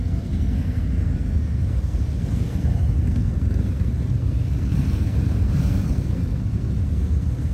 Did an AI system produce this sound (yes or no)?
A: yes